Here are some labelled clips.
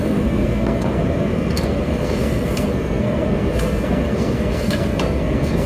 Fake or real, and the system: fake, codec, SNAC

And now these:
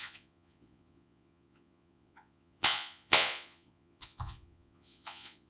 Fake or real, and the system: fake, vocoder, Vocos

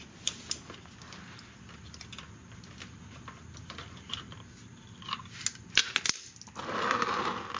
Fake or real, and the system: real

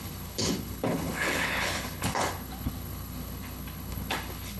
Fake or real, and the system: fake, codec, HILCodec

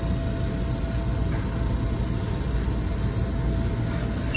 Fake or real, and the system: real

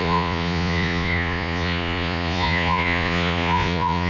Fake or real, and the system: fake, vocoder, Vocos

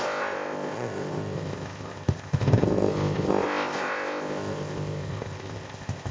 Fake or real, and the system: fake, codec, ZipCodec